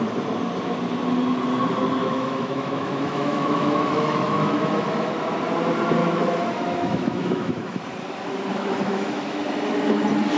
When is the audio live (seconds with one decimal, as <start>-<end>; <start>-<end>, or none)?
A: 0.0-2.0; 5.1-6.0; 7.8-8.5; 9.4-10.4